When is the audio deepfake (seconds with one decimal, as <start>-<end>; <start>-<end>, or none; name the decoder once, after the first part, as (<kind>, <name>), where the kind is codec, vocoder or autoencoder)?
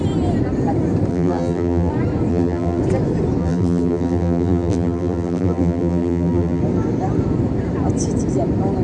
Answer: 1.1-1.9 (vocoder, BigVGAN v2); 2.3-2.8; 3.4-6.6